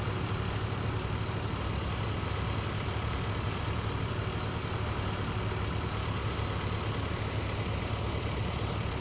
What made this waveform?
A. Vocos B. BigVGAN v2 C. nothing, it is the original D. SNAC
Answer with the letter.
C